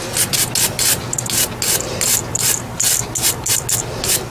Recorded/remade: recorded